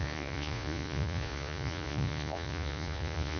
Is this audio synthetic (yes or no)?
yes